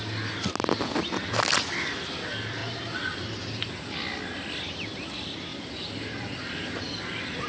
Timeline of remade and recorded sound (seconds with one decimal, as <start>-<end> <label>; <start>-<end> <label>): 0.0-2.6 recorded; 2.6-3.7 remade; 3.7-5.5 recorded; 5.5-6.8 remade; 6.8-7.5 recorded